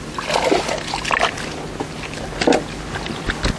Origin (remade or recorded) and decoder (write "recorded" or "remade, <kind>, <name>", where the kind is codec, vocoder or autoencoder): recorded